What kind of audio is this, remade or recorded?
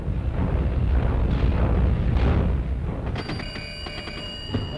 recorded